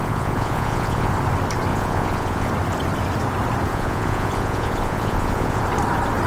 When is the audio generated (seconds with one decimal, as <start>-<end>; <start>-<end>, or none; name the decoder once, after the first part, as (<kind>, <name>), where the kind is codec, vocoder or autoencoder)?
0.0-1.1 (vocoder, Vocos); 1.7-2.5; 3.7-5.6